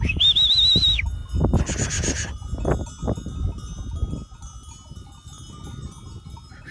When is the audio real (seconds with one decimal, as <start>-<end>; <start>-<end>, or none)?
0.0-6.7